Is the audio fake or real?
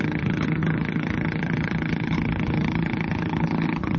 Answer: fake